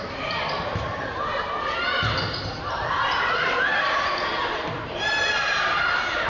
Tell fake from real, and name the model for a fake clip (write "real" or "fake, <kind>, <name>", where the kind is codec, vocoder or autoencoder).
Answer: fake, vocoder, BigVGAN v2